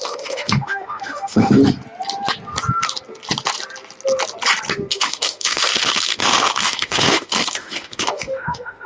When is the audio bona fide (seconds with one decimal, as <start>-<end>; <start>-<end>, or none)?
1.6-4.9